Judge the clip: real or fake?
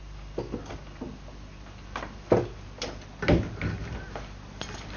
real